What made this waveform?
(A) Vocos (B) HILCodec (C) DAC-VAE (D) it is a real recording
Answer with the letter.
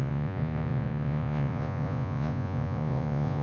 A